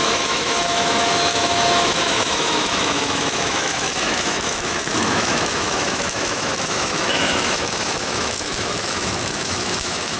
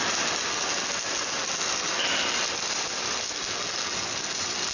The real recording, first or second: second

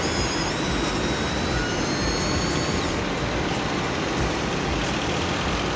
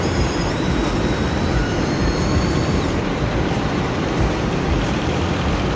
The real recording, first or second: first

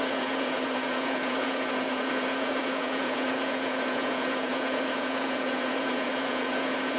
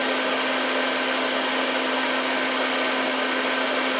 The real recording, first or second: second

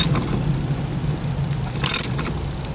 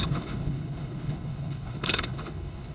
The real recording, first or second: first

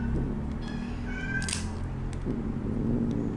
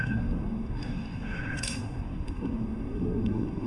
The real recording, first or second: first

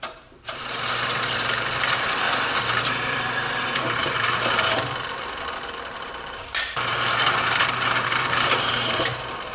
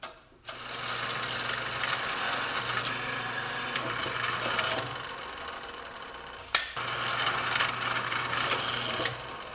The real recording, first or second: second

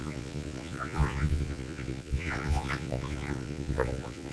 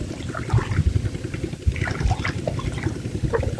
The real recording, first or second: second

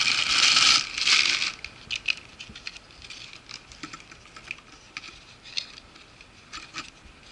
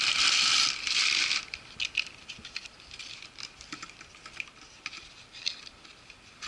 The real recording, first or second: first